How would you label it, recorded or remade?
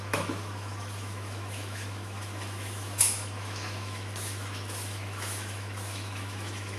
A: remade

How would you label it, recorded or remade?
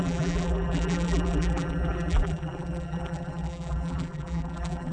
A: remade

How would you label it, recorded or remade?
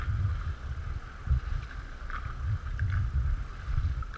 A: recorded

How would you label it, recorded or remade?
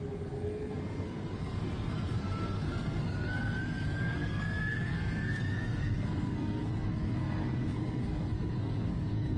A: remade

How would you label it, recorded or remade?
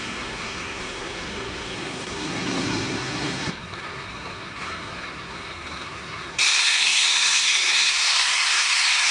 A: remade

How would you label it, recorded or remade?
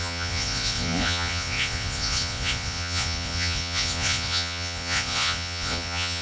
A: remade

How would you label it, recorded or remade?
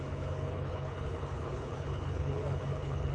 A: remade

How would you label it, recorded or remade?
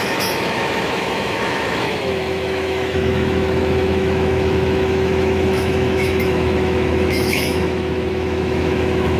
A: remade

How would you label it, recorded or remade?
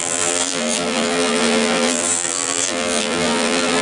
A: remade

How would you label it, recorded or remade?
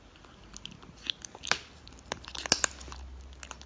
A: recorded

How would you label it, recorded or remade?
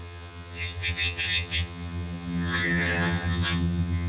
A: remade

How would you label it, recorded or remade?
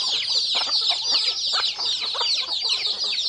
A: recorded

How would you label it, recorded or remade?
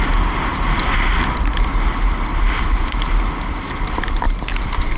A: recorded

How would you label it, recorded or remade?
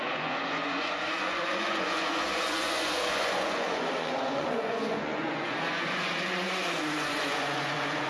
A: remade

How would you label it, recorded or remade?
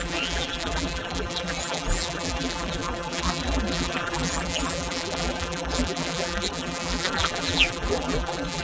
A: remade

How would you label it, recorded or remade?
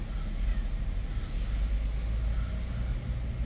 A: recorded